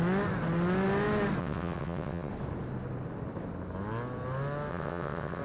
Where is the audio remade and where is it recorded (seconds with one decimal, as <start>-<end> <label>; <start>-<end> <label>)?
0.0-1.4 recorded; 1.4-2.3 remade; 2.3-4.7 recorded; 4.7-5.4 remade